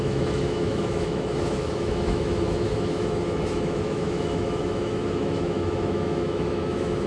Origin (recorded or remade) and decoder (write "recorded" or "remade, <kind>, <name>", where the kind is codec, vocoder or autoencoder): remade, autoencoder, DAC-VAE